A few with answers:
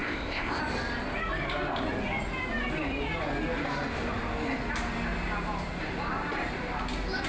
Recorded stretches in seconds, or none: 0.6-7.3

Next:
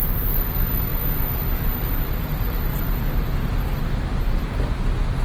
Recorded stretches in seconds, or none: 0.0-0.9; 2.1-2.7; 4.0-5.2

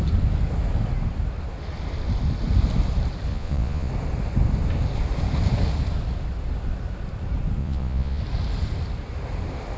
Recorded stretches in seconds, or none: 0.0-3.3; 3.9-7.6; 8.2-9.8

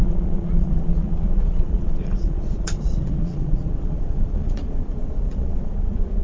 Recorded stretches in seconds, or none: none

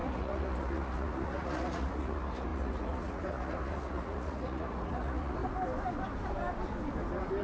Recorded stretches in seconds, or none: 5.4-7.4